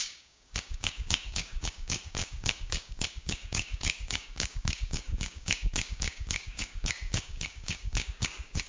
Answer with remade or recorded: remade